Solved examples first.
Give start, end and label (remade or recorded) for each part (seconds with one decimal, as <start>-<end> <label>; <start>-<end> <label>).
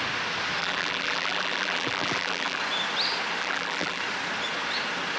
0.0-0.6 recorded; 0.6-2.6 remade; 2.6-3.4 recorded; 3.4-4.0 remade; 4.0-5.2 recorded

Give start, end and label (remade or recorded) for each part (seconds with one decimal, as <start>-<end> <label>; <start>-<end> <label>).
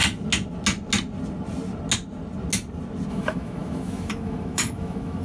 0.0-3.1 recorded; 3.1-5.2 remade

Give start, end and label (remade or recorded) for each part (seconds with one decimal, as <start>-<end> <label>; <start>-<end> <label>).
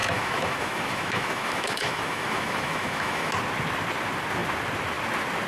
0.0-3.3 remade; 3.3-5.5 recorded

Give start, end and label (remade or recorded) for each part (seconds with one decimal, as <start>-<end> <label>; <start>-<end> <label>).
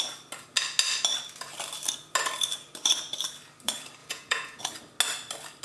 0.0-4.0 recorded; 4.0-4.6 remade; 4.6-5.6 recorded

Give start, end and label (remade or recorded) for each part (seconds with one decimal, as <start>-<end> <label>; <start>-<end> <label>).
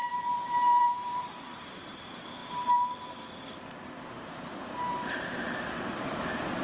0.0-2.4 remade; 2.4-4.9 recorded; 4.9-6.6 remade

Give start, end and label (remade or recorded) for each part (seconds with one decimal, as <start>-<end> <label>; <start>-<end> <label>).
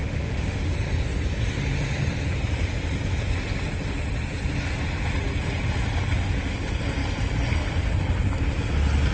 0.0-0.7 remade; 0.7-9.1 recorded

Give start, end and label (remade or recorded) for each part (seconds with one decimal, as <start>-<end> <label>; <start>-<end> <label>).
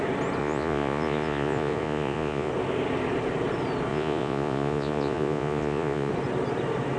0.0-0.4 recorded; 0.4-2.5 remade; 2.5-3.9 recorded; 3.9-6.1 remade; 6.1-7.0 recorded